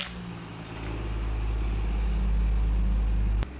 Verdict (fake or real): real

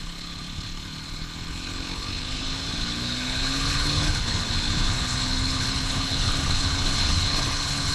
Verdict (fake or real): fake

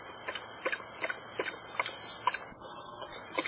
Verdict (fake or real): real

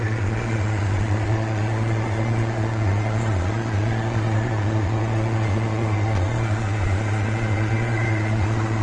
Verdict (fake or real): fake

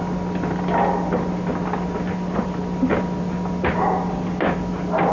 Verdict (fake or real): real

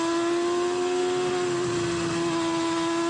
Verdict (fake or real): real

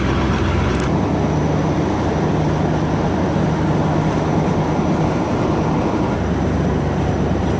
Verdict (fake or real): real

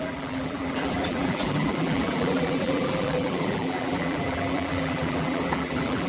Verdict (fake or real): fake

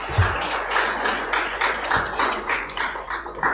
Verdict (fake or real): fake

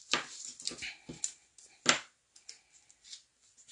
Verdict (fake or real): real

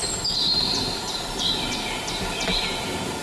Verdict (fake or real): real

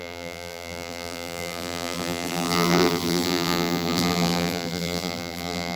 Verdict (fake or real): fake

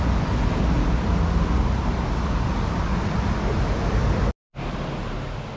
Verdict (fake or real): real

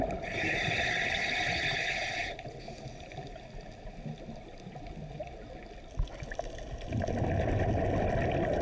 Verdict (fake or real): real